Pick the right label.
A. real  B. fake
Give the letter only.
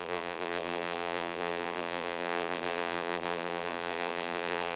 B